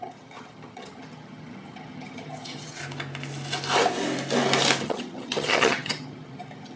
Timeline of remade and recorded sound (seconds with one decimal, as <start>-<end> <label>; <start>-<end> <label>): 0.0-2.8 remade; 2.8-4.8 recorded; 4.8-6.8 remade